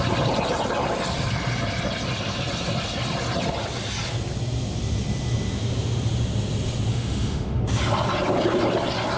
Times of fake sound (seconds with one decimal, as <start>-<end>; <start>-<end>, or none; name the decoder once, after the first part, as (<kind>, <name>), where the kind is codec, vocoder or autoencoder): 6.9-7.6 (autoencoder, DAC-VAE)